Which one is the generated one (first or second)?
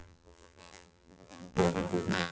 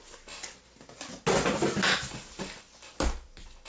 first